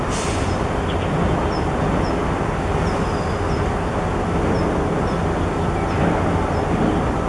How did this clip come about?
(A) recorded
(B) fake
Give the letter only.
A